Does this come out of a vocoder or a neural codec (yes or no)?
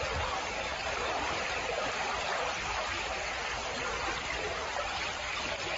yes